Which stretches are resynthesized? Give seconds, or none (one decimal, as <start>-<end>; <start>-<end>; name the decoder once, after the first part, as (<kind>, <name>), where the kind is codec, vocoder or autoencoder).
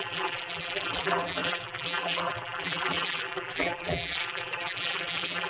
0.0-5.5 (vocoder, BigVGAN v2)